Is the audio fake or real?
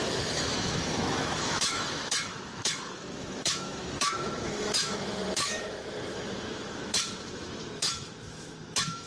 fake